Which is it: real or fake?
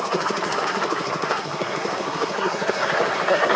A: fake